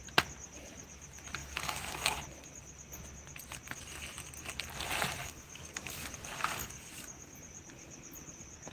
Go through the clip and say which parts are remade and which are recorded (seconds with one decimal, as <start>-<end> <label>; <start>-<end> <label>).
0.0-1.4 recorded; 1.4-2.2 remade; 2.2-5.2 recorded; 5.2-7.3 remade; 7.3-8.7 recorded